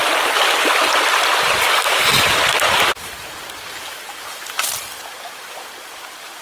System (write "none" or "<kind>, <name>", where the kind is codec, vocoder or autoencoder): none